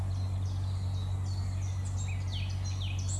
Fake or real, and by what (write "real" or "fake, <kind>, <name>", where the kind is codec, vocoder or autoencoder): real